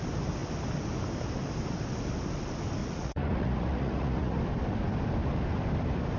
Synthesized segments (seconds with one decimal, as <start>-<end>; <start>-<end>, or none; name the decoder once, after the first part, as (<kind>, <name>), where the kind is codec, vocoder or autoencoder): 2.8-4.4 (vocoder, Vocos)